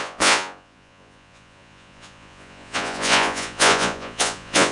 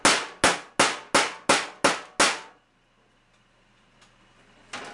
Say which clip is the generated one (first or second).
first